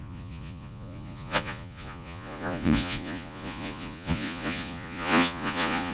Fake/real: fake